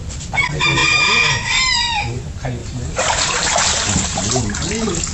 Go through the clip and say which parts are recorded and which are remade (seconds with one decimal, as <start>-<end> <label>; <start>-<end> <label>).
0.0-2.6 recorded; 2.6-4.4 remade; 4.4-5.1 recorded